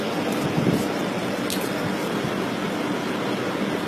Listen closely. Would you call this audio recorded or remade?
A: recorded